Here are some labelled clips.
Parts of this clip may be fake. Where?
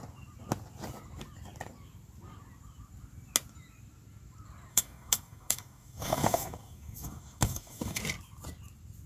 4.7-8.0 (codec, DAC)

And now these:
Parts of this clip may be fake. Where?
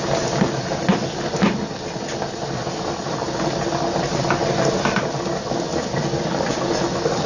none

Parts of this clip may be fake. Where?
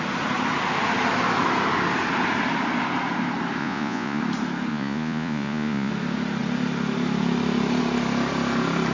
3.6-4.2 (vocoder, Vocos); 4.7-5.9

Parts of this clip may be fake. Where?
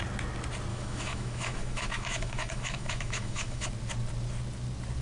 0.7-3.7 (autoencoder, DAC-VAE)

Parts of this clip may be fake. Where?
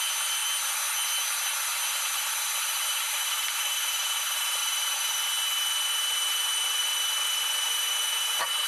none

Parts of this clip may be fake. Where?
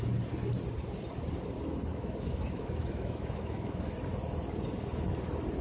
1.9-3.8 (autoencoder, DAC-VAE)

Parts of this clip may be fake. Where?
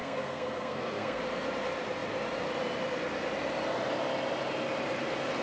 0.0-1.2 (codec, SNAC)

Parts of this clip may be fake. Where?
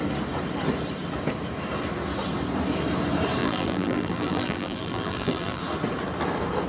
3.4-5.6 (vocoder, BigVGAN v2)